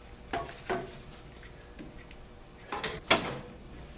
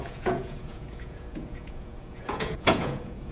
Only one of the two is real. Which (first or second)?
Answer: first